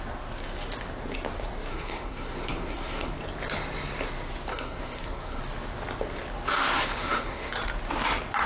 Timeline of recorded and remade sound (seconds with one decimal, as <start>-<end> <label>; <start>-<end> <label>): 0.0-1.7 recorded; 1.7-3.1 remade; 3.1-4.5 recorded; 4.5-5.4 remade; 5.4-7.0 recorded; 7.0-7.5 remade; 7.5-8.5 recorded